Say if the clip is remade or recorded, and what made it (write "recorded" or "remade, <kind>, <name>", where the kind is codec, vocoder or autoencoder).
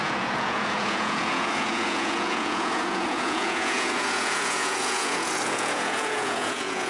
remade, vocoder, Vocos